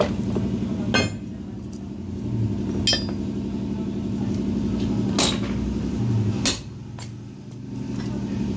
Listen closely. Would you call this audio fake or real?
real